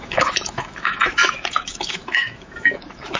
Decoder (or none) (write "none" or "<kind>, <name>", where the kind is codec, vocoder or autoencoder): autoencoder, DAC-VAE